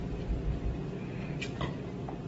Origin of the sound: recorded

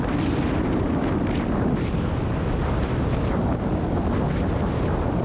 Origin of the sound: recorded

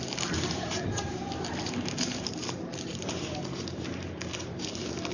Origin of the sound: remade